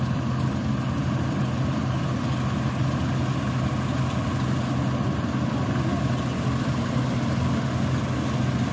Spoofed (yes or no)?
no